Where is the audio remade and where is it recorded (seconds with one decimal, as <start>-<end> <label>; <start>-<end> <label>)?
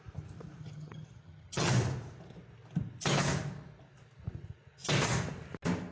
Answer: 0.0-0.6 recorded; 0.6-1.7 remade; 1.7-5.9 recorded